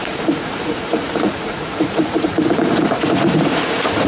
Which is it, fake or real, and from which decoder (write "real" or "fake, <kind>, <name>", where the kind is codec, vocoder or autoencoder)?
fake, vocoder, Vocos